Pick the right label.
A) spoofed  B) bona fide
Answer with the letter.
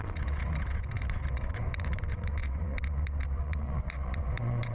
A